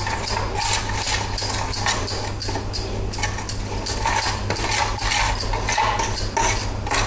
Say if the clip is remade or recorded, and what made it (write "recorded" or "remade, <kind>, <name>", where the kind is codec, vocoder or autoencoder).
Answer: recorded